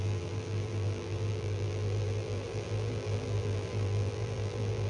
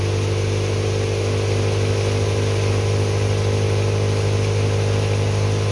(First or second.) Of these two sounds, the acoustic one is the second